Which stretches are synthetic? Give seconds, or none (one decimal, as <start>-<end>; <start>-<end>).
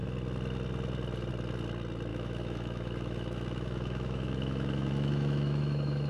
2.1-6.1